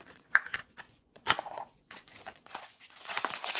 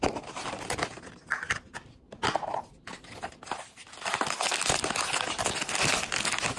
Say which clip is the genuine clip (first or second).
second